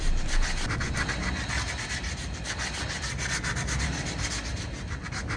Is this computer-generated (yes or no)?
no